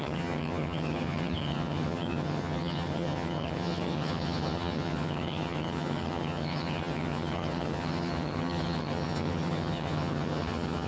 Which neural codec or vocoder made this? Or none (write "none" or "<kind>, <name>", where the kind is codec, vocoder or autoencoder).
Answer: vocoder, HiFi-GAN